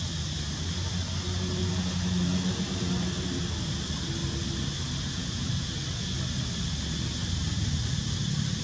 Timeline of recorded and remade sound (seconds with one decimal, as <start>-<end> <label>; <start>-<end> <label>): 0.0-1.7 recorded; 1.7-3.1 remade; 3.1-7.2 recorded; 7.2-8.6 remade